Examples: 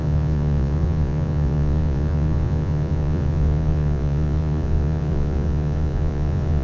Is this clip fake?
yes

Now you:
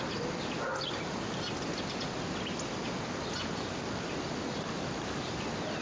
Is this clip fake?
no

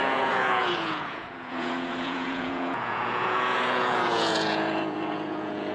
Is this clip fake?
yes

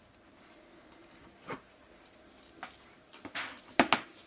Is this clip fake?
no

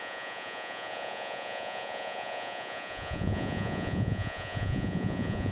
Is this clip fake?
yes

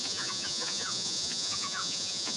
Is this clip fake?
yes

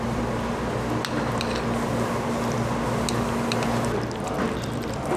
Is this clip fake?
no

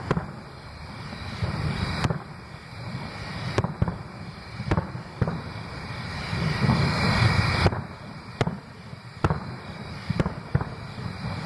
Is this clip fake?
no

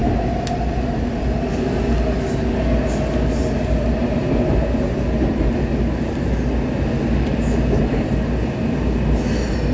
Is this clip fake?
no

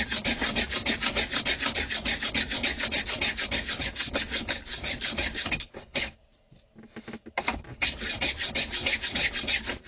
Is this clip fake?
no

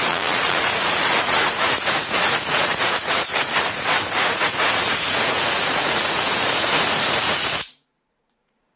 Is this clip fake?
yes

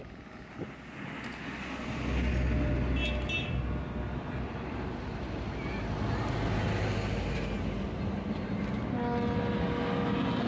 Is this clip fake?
no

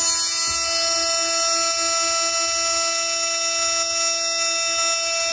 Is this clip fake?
no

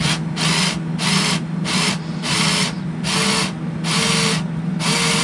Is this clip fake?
no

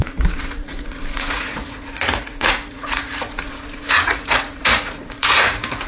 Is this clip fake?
yes